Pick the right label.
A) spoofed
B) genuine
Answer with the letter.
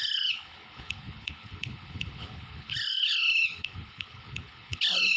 A